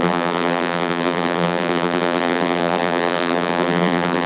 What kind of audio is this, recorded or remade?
remade